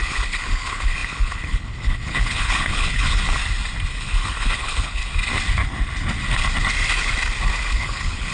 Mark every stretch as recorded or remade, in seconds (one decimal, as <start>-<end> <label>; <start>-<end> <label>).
0.0-3.4 remade; 3.4-3.9 recorded; 3.9-5.0 remade; 5.0-7.7 recorded; 7.7-8.3 remade